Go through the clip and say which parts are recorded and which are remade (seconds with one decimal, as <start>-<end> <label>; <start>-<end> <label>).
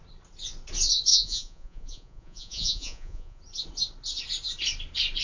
0.0-1.1 recorded; 1.1-3.4 remade; 3.4-5.2 recorded